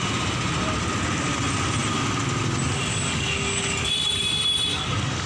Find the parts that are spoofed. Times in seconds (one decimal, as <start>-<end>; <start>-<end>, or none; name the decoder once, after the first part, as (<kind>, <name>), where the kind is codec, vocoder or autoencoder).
2.9-3.9 (codec, DAC); 4.7-5.3